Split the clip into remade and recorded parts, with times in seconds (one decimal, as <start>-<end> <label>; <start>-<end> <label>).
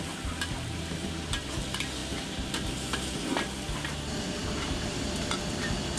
0.0-6.0 recorded